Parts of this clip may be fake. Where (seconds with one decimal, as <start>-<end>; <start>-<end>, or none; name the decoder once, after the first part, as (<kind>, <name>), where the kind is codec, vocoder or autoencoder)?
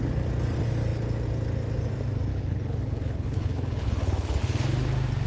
2.3-4.4 (codec, HILCodec)